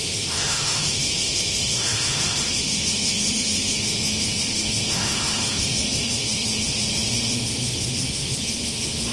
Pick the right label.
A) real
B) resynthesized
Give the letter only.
B